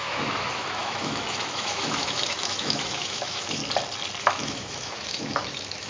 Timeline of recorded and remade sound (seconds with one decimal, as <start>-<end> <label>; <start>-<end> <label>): 0.0-3.6 remade; 3.6-4.2 recorded; 4.2-5.9 remade